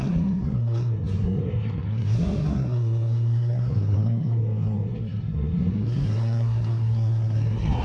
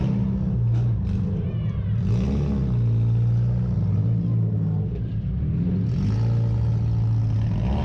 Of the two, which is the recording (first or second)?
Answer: second